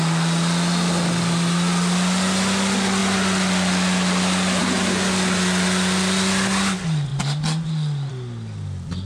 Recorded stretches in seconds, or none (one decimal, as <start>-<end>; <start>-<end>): 0.0-9.1